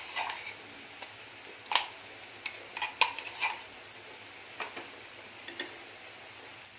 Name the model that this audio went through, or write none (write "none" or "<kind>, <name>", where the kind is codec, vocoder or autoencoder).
none